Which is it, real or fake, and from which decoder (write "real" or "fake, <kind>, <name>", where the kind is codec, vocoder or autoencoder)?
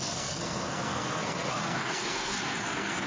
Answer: fake, codec, SNAC